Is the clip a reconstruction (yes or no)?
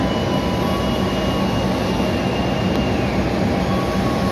no